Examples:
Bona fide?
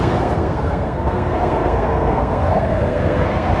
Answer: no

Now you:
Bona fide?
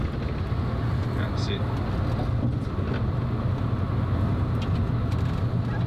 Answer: yes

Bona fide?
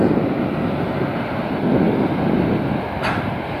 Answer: yes